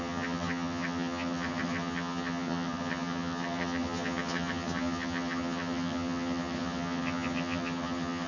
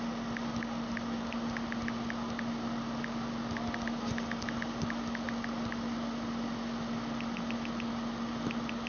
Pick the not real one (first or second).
first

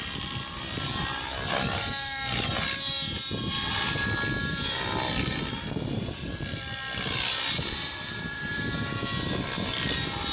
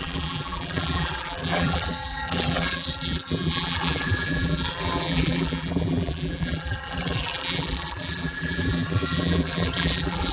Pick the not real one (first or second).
second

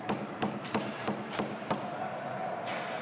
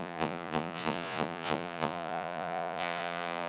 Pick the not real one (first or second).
second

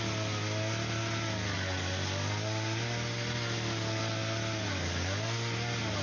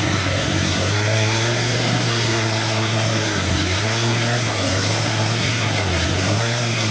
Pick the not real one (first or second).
second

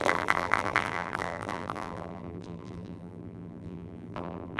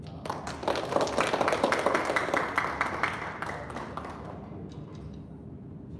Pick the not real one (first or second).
first